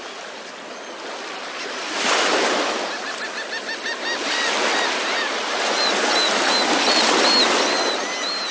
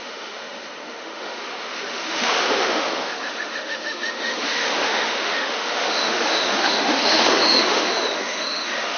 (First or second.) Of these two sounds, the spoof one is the second